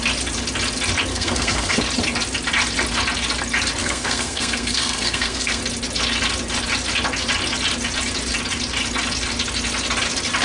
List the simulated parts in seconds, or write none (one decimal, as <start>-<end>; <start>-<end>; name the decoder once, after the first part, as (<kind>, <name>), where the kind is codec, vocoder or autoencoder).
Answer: 1.1-1.8 (codec, SNAC); 3.8-5.6